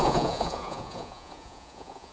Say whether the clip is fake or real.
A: fake